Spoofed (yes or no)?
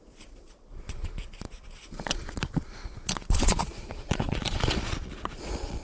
yes